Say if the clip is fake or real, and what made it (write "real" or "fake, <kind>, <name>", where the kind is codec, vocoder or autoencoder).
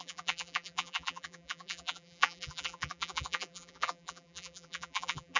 fake, vocoder, BigVGAN v2